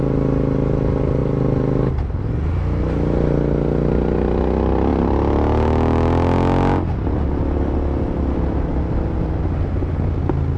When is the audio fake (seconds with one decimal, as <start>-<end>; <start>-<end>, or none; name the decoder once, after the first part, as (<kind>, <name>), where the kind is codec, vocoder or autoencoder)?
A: none